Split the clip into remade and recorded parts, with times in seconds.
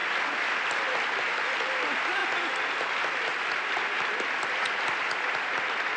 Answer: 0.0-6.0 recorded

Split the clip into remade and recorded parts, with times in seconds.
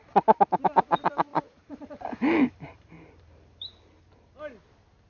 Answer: 0.0-1.3 recorded; 1.3-4.4 remade; 4.4-5.1 recorded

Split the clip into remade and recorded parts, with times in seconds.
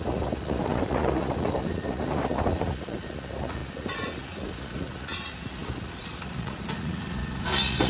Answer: 0.0-7.9 remade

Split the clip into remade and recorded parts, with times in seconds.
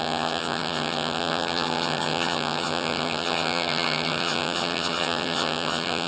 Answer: 0.0-6.1 remade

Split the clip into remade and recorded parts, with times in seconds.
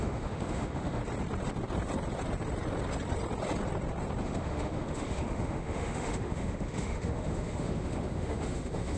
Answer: 0.0-1.0 remade; 1.0-4.2 recorded; 4.2-9.0 remade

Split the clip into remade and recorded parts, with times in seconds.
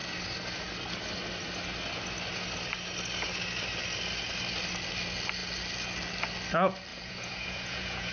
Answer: 0.0-6.9 recorded; 6.9-8.1 remade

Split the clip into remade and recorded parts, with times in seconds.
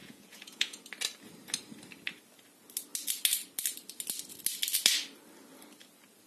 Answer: 0.0-0.8 remade; 0.8-6.3 recorded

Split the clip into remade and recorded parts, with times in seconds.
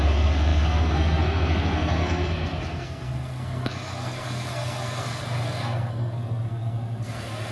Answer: 0.0-7.5 remade